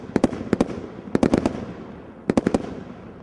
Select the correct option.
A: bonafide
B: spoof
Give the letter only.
A